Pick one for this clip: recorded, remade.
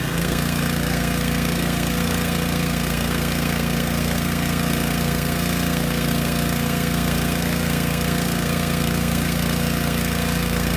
remade